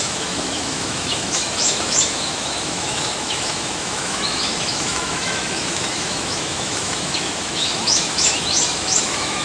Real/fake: fake